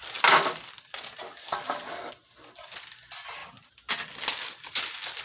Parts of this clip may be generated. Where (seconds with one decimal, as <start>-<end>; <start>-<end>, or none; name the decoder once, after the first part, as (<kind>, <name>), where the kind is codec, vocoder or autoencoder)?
1.4-2.1 (codec, DAC)